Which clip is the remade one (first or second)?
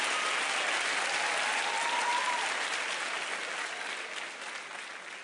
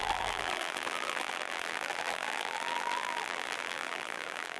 second